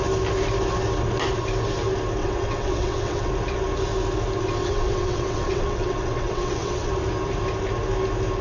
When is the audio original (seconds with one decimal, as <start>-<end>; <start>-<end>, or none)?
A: 0.0-2.2; 3.3-4.6; 6.9-8.4